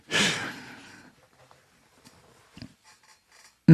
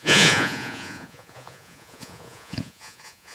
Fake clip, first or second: second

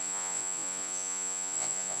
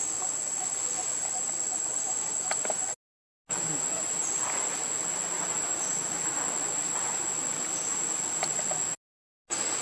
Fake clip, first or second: first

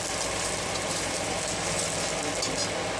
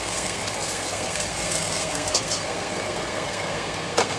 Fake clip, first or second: second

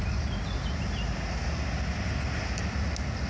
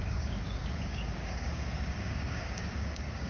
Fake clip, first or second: second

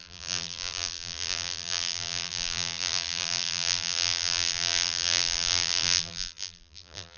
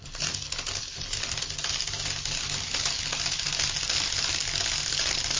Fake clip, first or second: first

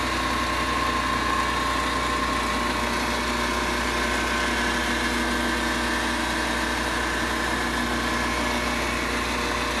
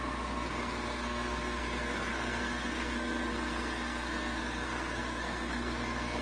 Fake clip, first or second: second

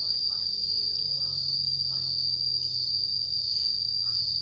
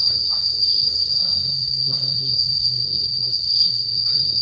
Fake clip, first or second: second